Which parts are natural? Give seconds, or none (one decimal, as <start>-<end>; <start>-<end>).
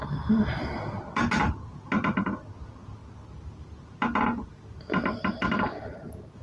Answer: 0.0-6.4